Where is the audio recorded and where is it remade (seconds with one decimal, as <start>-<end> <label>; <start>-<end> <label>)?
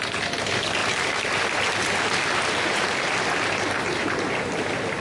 0.0-5.0 recorded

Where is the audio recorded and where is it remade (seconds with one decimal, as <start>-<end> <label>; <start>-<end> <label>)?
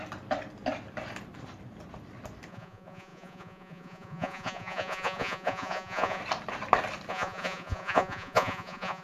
0.0-2.5 recorded; 2.5-6.2 remade; 6.2-7.1 recorded; 7.1-9.0 remade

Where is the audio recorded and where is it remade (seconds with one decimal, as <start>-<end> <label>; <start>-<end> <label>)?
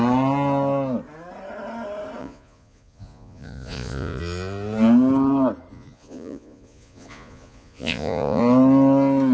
0.0-2.2 recorded; 2.2-4.2 remade; 4.2-5.7 recorded; 5.7-8.4 remade; 8.4-9.3 recorded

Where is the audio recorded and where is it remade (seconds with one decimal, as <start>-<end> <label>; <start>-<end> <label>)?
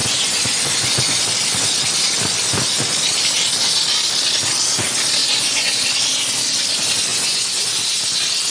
0.0-1.2 remade; 1.2-5.2 recorded; 5.2-5.8 remade; 5.8-7.1 recorded; 7.1-7.7 remade; 7.7-8.5 recorded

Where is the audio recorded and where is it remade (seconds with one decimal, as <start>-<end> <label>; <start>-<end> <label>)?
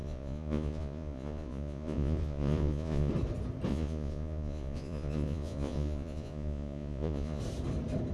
0.0-3.1 remade; 3.1-3.7 recorded; 3.7-7.4 remade; 7.4-8.1 recorded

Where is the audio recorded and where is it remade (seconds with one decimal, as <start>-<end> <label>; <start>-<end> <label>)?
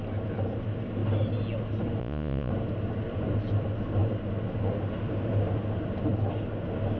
0.0-2.0 recorded; 2.0-2.5 remade; 2.5-7.0 recorded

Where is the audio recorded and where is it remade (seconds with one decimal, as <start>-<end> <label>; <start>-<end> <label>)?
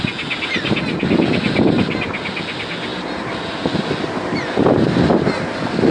0.0-5.9 recorded